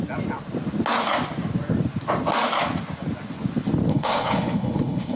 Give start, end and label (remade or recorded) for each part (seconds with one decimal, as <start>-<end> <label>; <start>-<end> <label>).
0.0-3.9 recorded; 3.9-5.2 remade